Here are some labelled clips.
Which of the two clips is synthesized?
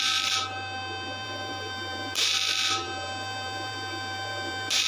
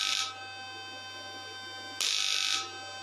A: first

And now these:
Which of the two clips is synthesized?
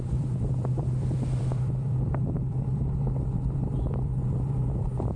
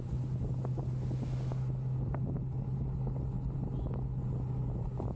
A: first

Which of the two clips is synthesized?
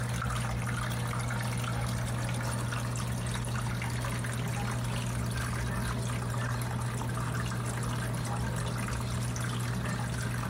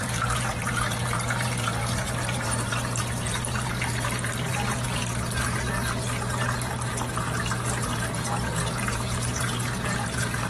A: second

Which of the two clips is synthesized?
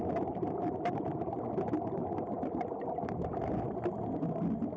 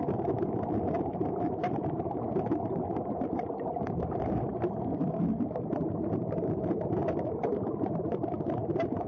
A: second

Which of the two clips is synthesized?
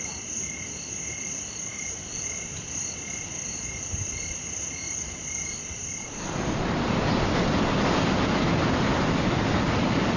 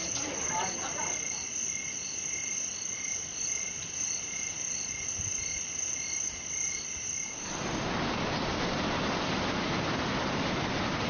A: first